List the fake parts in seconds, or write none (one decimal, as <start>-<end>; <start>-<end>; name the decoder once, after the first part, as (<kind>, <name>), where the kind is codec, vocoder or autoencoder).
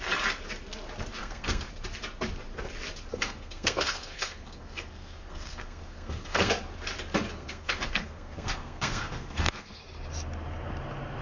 1.2-1.7 (codec, SNAC); 3.1-6.5; 7.3-9.8